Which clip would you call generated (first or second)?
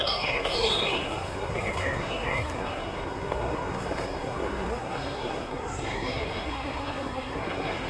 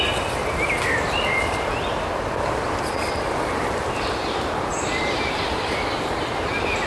first